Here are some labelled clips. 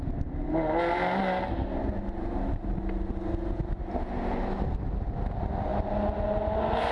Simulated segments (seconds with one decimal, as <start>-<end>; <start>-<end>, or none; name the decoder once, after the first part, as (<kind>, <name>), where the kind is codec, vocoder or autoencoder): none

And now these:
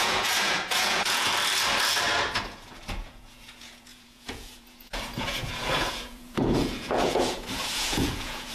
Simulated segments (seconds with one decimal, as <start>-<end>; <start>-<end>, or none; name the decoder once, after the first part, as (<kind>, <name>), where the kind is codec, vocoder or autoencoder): 0.0-1.3 (vocoder, Vocos); 2.4-8.5

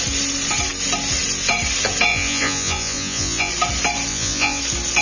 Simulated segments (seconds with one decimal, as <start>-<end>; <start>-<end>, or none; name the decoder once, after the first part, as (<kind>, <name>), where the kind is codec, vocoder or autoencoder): 2.1-3.5 (vocoder, Vocos); 4.1-4.6

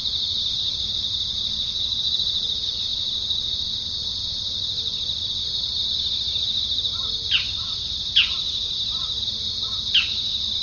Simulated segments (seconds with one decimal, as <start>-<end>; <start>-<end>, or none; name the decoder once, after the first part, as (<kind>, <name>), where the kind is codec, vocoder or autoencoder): none